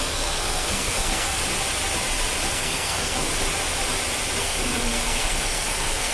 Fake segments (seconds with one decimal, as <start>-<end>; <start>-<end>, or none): 0.0-1.4; 2.5-3.3; 4.4-6.1